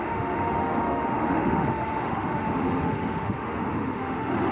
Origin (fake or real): fake